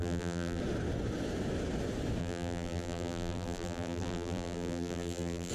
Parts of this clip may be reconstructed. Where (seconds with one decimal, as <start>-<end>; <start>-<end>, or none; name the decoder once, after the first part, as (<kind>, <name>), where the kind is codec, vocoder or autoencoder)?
0.0-0.6 (vocoder, BigVGAN v2); 2.2-5.5